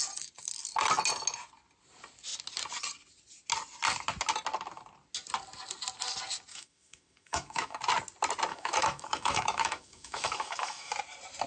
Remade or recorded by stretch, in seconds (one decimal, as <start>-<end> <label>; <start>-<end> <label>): 0.0-6.5 recorded; 6.5-7.8 remade; 7.8-8.5 recorded; 8.5-10.9 remade; 10.9-11.5 recorded